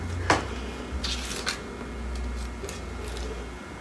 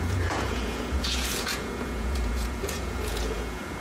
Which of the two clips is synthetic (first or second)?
second